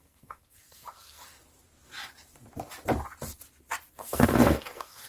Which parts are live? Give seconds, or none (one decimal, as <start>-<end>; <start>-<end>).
1.4-3.9